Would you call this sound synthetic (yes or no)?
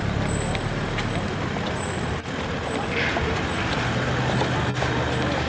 no